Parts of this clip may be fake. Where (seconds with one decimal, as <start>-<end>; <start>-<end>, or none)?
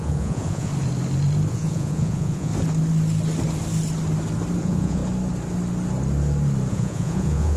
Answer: 0.0-0.7; 1.5-2.5; 4.6-5.0; 6.7-7.6